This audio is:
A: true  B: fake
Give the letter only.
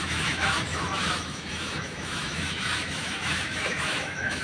B